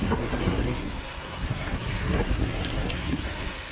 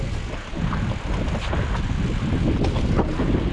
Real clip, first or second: second